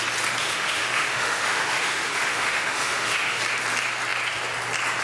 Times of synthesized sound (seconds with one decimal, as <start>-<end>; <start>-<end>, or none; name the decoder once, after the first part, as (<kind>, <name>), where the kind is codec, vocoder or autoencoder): 0.4-3.4 (autoencoder, DAC-VAE)